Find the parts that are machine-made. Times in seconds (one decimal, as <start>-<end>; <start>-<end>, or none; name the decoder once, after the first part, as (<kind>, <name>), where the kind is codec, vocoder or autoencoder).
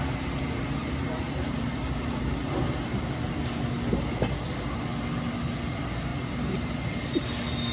0.8-1.7 (vocoder, BigVGAN v2); 6.1-6.8